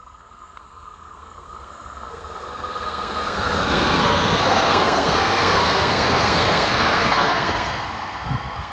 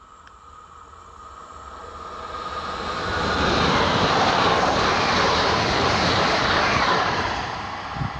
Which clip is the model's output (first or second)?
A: first